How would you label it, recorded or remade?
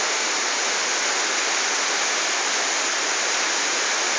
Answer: recorded